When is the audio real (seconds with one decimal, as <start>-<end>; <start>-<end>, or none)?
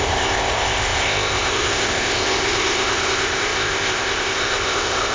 none